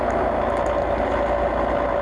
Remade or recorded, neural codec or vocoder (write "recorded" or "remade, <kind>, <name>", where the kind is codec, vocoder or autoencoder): recorded